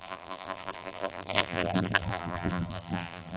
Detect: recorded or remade remade